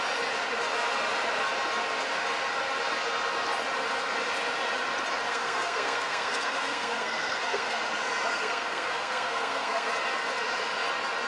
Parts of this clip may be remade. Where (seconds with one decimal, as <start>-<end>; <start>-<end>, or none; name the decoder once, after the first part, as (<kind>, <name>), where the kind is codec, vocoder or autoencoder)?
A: 5.3-7.8 (codec, SNAC); 8.3-9.9